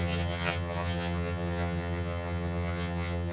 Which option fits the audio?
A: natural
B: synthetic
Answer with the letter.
B